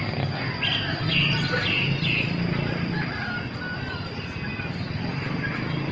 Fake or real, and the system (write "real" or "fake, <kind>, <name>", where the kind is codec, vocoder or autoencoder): real